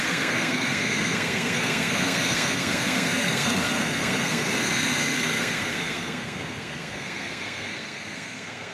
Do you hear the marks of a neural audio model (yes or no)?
yes